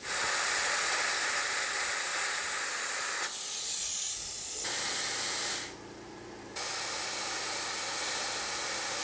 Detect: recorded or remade recorded